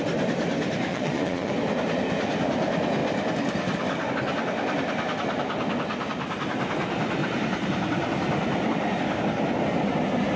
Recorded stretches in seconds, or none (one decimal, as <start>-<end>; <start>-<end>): 0.0-0.9; 1.5-10.4